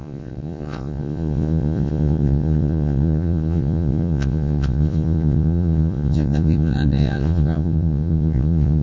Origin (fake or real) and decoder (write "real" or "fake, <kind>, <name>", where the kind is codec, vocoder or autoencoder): fake, vocoder, Vocos